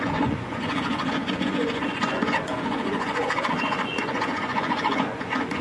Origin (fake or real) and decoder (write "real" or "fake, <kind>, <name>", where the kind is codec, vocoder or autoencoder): fake, vocoder, Vocos